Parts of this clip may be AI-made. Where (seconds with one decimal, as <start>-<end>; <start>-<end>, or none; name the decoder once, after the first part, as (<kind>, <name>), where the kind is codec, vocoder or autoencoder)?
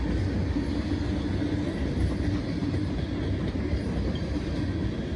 2.6-4.5 (vocoder, BigVGAN v2)